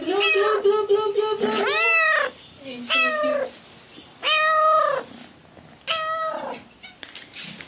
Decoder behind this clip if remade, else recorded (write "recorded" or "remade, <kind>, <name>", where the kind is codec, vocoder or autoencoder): recorded